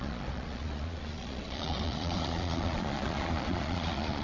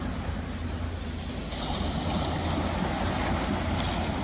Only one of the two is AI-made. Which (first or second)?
first